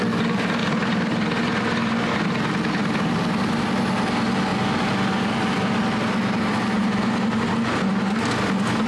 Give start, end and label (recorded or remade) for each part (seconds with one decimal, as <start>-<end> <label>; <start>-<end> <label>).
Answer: 0.0-0.6 recorded; 0.6-1.4 remade; 1.4-4.5 recorded; 4.5-5.8 remade; 5.8-6.8 recorded; 6.8-8.1 remade; 8.1-8.9 recorded